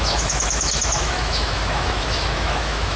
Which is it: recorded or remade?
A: remade